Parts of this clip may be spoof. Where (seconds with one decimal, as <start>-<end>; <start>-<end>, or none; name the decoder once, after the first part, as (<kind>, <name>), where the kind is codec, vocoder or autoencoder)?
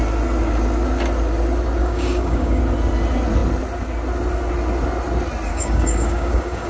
1.8-2.6 (codec, DAC); 5.5-6.7